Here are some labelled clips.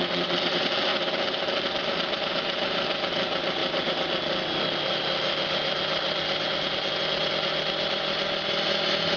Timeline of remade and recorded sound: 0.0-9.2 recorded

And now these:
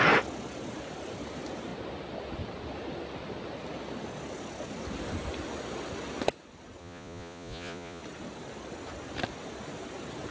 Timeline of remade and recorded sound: 0.0-6.8 recorded; 6.8-8.0 remade; 8.0-10.3 recorded

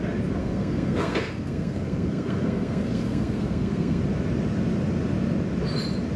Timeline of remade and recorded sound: 0.0-0.4 recorded; 0.4-4.0 remade; 4.0-6.2 recorded

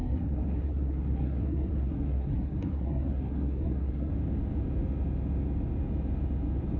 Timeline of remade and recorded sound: 0.0-4.1 remade; 4.1-6.8 recorded

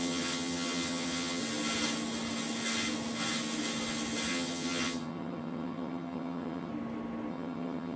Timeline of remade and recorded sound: 0.0-1.4 remade; 1.4-4.3 recorded; 4.3-6.7 remade; 6.7-7.3 recorded; 7.3-8.0 remade

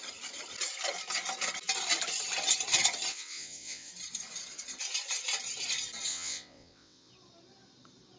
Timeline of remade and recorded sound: 0.0-3.1 recorded; 3.1-3.9 remade; 3.9-6.1 recorded; 6.1-7.1 remade; 7.1-8.2 recorded

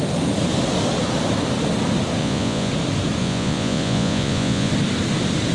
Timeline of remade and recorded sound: 0.0-2.2 recorded; 2.2-2.7 remade; 2.7-3.2 recorded; 3.2-4.7 remade; 4.7-5.5 recorded

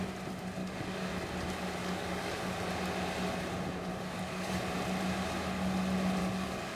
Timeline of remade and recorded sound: 0.0-0.6 recorded; 0.6-1.1 remade; 1.1-1.8 recorded; 1.8-2.7 remade; 2.7-3.9 recorded; 3.9-4.6 remade; 4.6-6.2 recorded; 6.2-6.8 remade